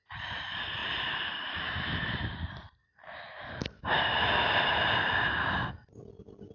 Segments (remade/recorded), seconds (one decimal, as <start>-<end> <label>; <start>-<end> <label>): 0.0-0.8 recorded; 0.8-2.0 remade; 2.0-6.5 recorded